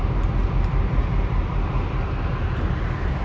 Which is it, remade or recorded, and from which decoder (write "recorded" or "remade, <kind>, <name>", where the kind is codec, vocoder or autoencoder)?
recorded